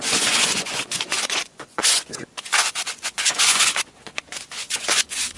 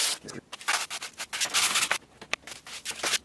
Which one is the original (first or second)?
second